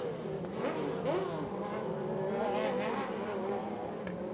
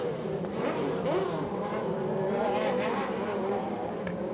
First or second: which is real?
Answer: first